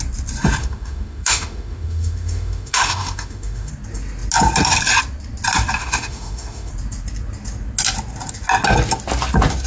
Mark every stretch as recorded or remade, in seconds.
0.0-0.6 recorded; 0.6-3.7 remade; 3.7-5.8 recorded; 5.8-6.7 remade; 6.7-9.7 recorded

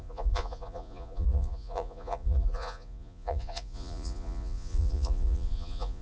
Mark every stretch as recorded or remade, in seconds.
0.0-6.0 remade

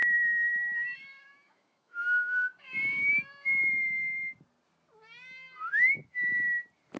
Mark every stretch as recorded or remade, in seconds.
0.0-3.1 remade; 3.1-7.0 recorded

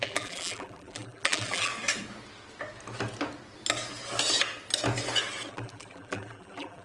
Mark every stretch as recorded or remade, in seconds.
0.0-1.7 remade; 1.7-5.5 recorded; 5.5-6.8 remade

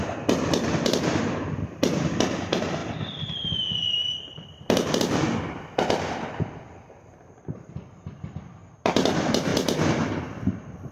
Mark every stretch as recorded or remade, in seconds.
0.0-10.9 remade

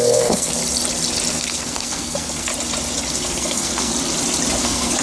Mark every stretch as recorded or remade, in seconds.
0.0-0.6 remade; 0.6-1.3 recorded; 1.3-2.5 remade; 2.5-3.1 recorded; 3.1-3.9 remade; 3.9-4.6 recorded; 4.6-5.0 remade